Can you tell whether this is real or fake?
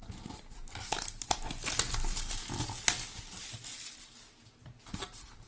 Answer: real